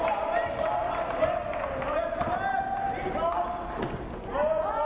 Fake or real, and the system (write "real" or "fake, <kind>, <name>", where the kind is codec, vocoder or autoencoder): real